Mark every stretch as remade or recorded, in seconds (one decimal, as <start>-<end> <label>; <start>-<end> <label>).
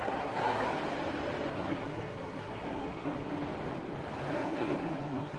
0.0-0.7 remade; 0.7-1.5 recorded; 1.5-3.3 remade; 3.3-4.3 recorded; 4.3-5.4 remade